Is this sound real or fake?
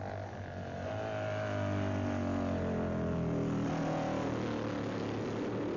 real